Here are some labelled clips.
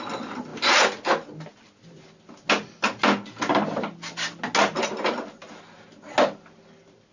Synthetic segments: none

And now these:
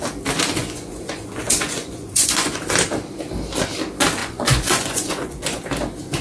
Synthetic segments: 0.6-2.6 (vocoder, Vocos); 4.2-5.6

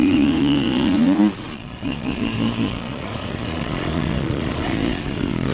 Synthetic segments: 0.0-5.5 (vocoder, Vocos)